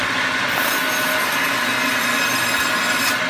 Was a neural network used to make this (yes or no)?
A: no